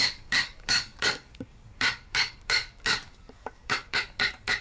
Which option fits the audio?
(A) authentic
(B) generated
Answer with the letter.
B